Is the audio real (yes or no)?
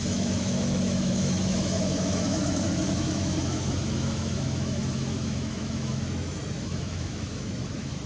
no